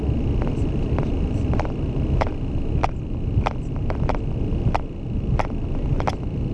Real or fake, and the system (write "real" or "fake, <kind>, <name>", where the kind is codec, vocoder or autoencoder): fake, vocoder, BigVGAN v2